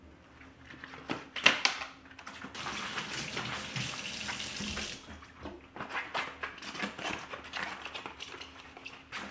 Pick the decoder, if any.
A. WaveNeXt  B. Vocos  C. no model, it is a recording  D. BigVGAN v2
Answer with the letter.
C